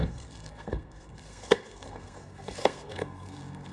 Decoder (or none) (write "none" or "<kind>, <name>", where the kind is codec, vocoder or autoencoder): codec, SNAC